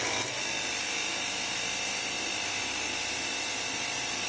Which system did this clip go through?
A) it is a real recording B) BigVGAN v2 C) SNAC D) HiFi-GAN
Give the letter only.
A